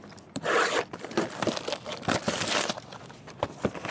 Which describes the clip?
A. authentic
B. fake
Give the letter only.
B